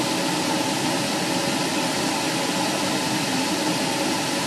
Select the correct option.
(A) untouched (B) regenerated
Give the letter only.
A